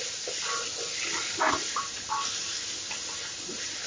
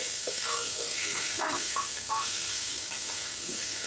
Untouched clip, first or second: first